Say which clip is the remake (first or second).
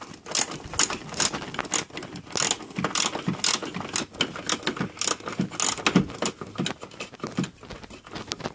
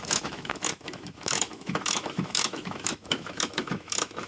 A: second